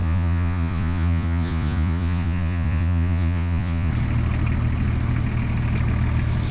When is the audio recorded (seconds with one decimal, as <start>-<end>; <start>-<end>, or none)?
3.9-6.5